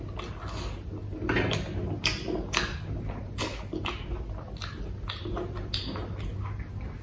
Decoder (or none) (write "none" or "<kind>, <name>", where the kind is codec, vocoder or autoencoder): none